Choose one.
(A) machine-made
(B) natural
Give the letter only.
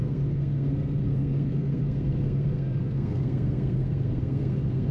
A